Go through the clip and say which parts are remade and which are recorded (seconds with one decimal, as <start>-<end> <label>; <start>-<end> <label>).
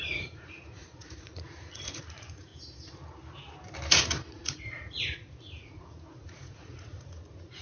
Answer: 0.0-2.5 remade; 2.5-4.3 recorded; 4.3-7.6 remade